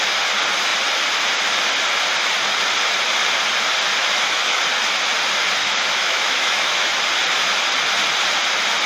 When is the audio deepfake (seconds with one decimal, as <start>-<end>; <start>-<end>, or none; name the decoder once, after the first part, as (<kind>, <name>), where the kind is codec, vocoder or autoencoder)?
4.0-4.6 (autoencoder, DAC-VAE); 5.6-6.9